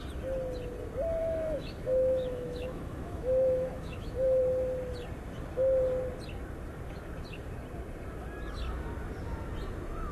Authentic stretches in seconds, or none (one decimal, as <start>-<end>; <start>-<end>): 0.0-1.2; 4.4-10.1